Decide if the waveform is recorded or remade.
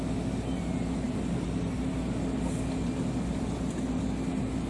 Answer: recorded